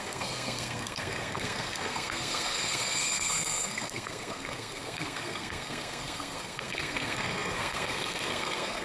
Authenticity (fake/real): fake